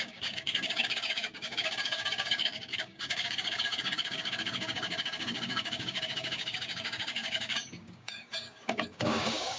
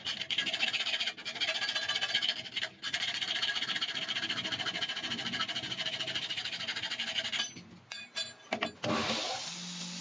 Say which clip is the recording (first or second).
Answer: second